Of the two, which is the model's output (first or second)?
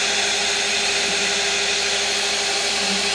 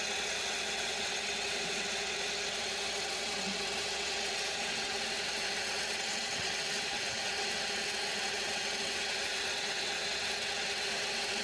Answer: second